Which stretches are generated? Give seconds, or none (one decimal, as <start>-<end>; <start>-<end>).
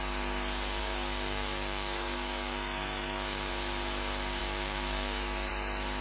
0.8-3.5; 4.4-5.5